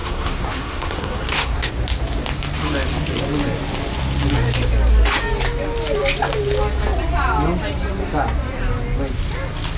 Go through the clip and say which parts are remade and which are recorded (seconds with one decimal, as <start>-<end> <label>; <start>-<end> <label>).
0.0-1.7 remade; 1.7-9.8 recorded